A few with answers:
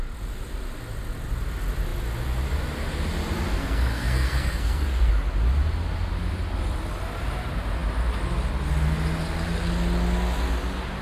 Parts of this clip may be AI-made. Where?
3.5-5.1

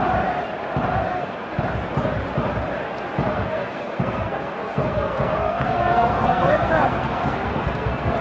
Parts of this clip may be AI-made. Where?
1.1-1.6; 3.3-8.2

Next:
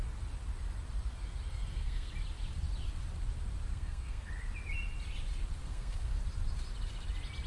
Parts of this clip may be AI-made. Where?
1.5-2.1; 3.7-4.3; 5.6-6.2

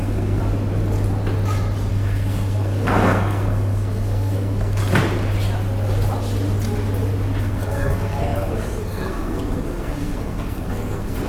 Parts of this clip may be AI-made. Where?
0.0-0.4; 1.9-4.8; 7.4-11.3